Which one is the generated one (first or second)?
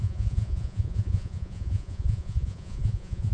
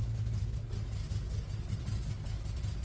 first